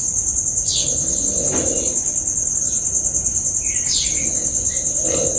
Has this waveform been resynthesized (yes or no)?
no